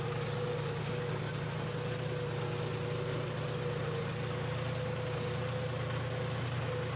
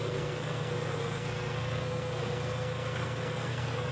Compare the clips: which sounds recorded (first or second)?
first